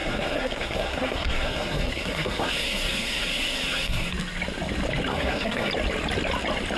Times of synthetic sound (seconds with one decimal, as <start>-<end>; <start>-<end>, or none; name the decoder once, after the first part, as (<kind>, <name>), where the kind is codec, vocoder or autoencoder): 0.0-4.1 (codec, SNAC); 5.1-5.7